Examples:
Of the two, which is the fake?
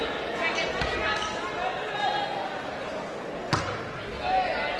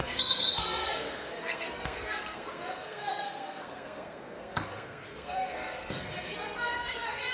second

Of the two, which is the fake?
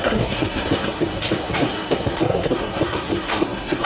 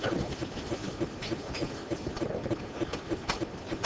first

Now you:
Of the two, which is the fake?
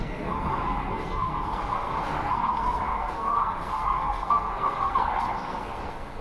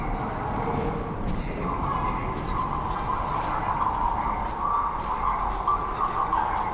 first